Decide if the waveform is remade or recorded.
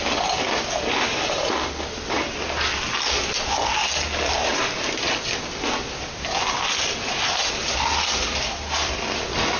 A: recorded